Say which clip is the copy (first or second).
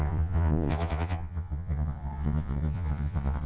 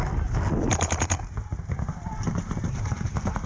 first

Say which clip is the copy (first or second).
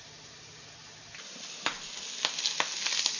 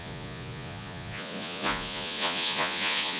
second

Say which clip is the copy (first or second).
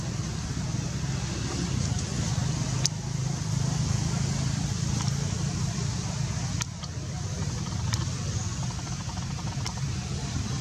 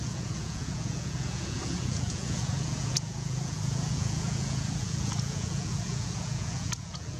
second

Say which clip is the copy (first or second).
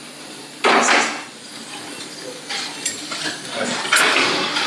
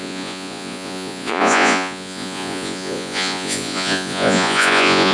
second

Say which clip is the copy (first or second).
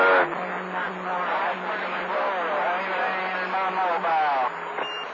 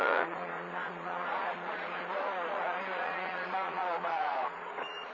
second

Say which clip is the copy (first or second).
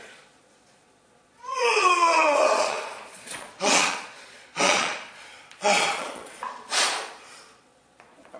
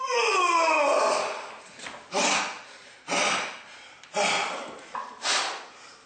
first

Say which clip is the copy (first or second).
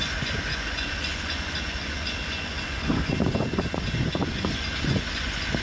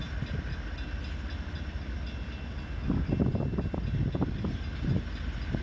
first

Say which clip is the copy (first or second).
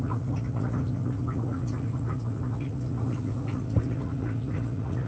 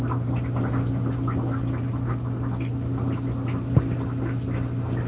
first